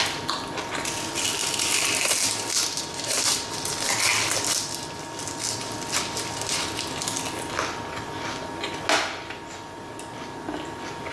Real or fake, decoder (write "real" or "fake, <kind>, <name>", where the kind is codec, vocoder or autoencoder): real